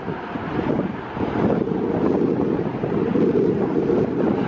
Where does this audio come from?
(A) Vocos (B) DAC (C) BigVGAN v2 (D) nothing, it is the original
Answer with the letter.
C